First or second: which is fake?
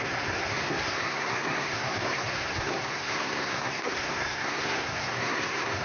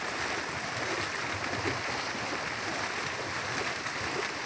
first